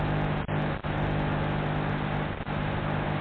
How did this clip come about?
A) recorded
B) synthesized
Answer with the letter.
A